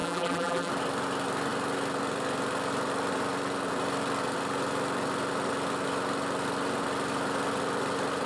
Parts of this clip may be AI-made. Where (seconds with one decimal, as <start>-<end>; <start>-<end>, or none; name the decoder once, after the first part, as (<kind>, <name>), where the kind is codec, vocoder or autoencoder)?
0.0-0.7 (vocoder, BigVGAN v2)